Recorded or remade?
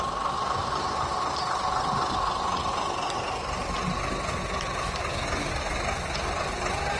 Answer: recorded